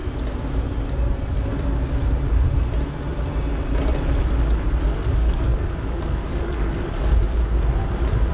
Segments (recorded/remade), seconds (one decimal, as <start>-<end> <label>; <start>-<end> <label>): 0.0-4.8 recorded; 4.8-7.1 remade; 7.1-8.3 recorded